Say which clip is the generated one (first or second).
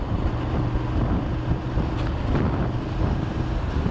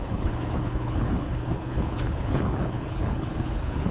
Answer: second